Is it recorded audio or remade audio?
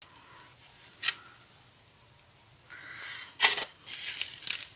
recorded